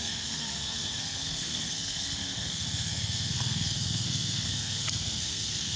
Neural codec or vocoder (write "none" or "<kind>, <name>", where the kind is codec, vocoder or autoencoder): codec, SNAC